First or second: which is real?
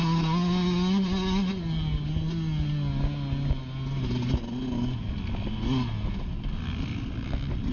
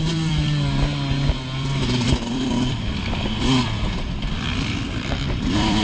first